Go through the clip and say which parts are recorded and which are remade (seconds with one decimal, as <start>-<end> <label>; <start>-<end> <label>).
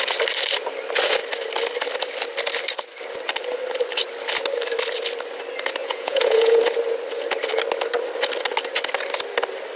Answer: 0.0-5.8 recorded; 5.8-6.6 remade; 6.6-9.8 recorded